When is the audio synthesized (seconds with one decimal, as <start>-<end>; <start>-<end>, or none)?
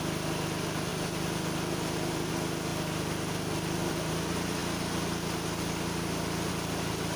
0.9-2.3